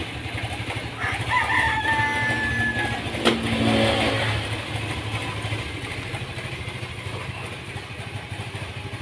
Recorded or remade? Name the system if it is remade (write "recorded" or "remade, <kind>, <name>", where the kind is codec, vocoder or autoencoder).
recorded